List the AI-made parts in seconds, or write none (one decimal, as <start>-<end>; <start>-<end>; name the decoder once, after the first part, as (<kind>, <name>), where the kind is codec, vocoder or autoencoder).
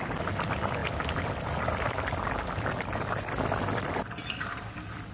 0.8-3.9 (vocoder, BigVGAN v2)